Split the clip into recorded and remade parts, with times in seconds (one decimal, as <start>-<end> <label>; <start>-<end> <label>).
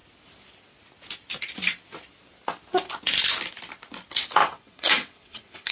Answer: 0.0-4.4 recorded; 4.4-5.7 remade